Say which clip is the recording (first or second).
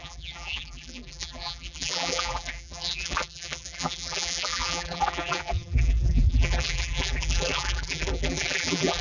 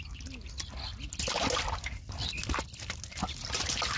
second